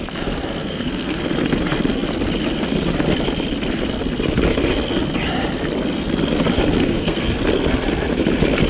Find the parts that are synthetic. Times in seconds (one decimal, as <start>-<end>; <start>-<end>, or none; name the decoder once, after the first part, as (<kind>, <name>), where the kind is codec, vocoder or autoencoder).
0.6-1.2 (codec, SNAC); 6.8-7.3